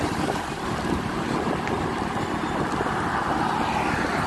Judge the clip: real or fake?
real